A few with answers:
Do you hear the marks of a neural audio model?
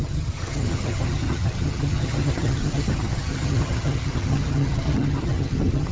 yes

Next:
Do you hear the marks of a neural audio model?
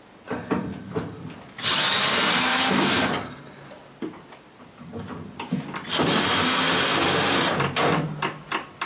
no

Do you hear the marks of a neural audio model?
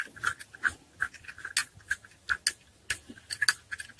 no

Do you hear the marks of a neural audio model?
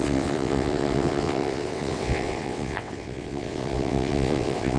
yes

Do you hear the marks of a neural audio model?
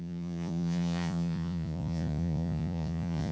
yes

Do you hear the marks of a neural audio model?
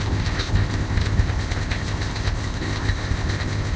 yes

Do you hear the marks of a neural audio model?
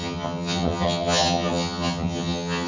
yes